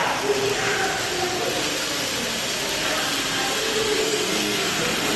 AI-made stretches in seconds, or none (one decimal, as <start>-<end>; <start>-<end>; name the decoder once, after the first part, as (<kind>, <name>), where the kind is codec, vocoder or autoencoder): 4.0-4.8 (codec, SNAC)